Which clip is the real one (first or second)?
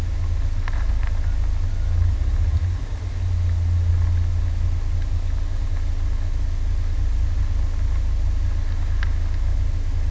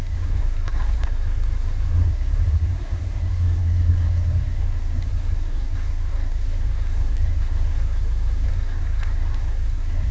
first